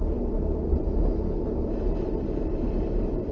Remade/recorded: recorded